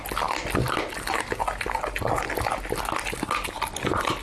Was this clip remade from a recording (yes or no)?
no